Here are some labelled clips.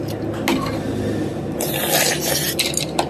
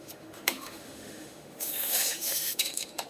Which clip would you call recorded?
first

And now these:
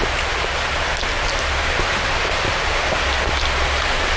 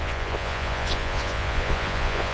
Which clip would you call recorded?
first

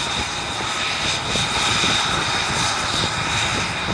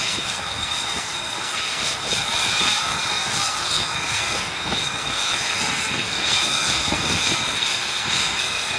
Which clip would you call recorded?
first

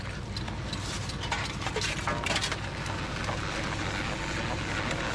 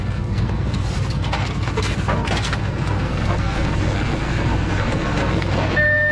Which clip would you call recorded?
first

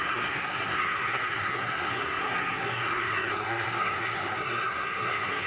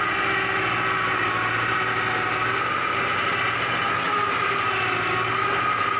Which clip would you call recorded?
second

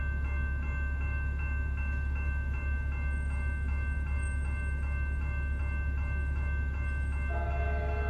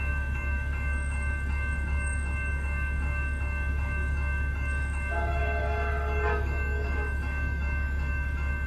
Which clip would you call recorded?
first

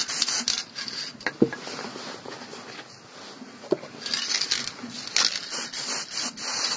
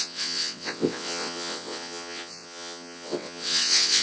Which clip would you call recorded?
first